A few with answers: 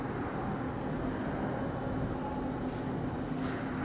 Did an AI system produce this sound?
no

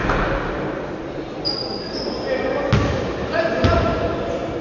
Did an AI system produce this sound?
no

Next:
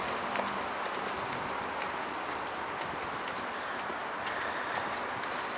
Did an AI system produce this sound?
no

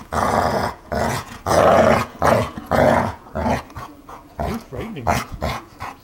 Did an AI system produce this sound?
yes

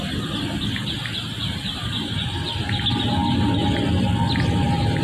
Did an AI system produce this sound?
no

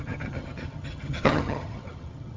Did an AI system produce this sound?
yes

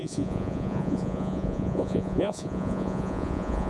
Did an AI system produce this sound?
yes